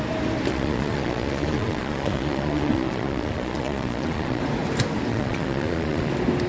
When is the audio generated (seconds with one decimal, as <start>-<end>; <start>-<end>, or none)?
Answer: 0.5-4.4; 5.1-6.1